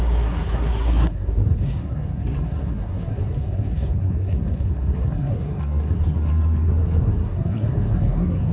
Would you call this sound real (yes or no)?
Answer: no